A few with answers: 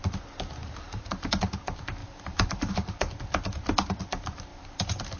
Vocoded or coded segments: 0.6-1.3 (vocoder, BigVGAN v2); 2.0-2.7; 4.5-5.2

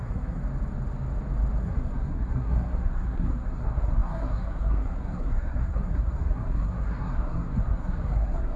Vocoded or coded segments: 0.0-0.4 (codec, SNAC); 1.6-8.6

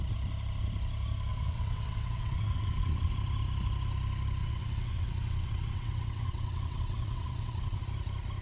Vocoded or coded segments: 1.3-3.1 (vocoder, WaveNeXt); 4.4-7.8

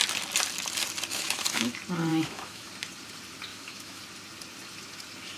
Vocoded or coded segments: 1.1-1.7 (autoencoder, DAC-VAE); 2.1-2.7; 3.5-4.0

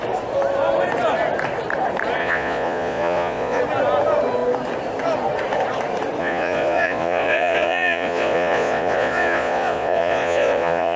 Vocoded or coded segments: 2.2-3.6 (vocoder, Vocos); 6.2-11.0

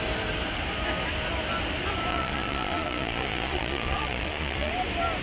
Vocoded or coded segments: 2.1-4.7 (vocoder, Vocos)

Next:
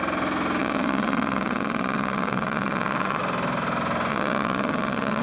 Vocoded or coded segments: 0.6-3.2 (vocoder, WaveNeXt); 4.1-5.2

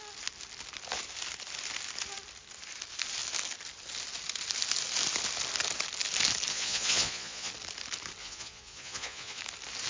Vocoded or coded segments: 6.5-7.5 (vocoder, Vocos); 8.2-9.4